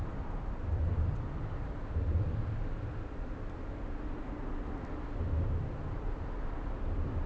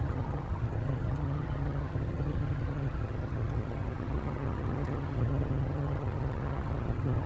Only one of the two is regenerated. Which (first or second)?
second